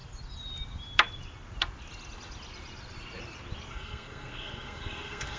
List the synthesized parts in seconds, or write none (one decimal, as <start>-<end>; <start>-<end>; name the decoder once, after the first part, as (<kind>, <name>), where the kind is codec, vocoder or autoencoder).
3.7-5.4 (codec, SNAC)